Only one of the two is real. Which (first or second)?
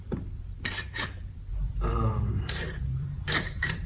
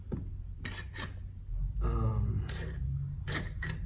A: second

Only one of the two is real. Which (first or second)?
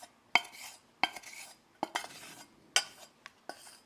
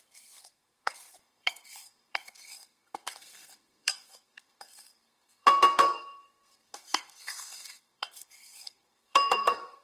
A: first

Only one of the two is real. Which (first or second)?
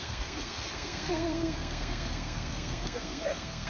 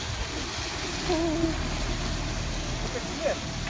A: second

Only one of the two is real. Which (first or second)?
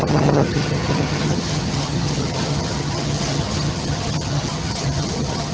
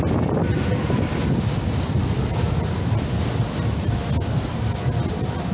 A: second